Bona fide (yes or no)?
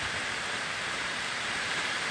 no